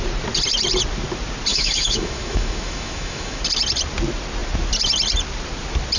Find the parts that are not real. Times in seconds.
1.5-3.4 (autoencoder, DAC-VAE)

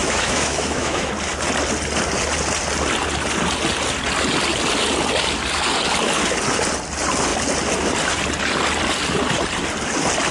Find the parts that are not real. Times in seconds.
0.0-1.1 (autoencoder, DAC-VAE)

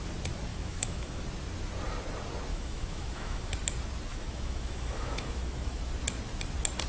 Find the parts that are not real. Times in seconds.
0.5-1.2 (autoencoder, DAC-VAE); 2.5-3.5; 4.1-5.8

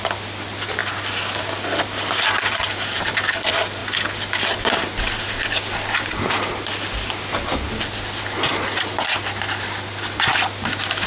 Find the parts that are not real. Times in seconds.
none

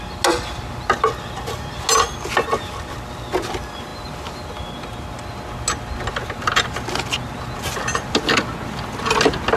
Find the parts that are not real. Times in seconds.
none

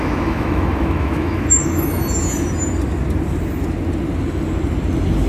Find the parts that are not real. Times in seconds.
0.0-2.0 (autoencoder, DAC-VAE)

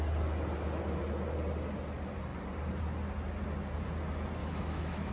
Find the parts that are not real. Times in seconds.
4.4-5.1 (autoencoder, DAC-VAE)